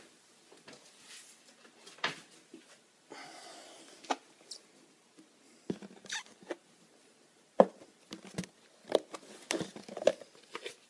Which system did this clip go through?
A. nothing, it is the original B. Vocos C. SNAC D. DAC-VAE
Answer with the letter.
A